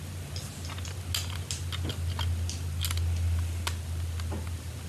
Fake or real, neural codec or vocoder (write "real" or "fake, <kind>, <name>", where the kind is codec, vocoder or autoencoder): real